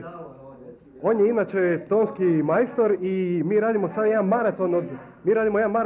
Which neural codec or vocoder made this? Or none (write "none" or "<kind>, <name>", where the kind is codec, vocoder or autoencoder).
none